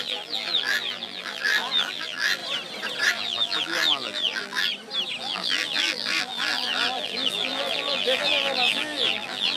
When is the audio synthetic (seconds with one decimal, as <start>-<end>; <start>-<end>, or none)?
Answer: 0.0-2.4; 3.1-4.7; 5.2-9.6